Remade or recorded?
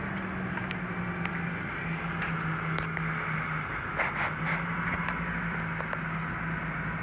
recorded